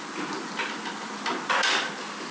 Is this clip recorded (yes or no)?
yes